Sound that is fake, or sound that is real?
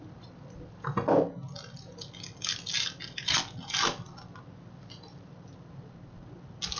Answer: real